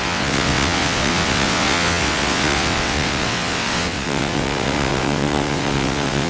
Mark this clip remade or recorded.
remade